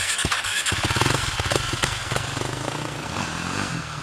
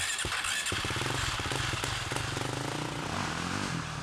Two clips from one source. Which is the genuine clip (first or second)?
second